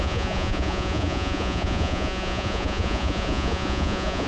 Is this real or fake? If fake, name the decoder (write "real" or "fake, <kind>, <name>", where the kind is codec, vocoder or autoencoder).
fake, vocoder, Vocos